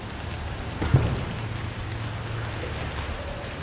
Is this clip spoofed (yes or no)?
no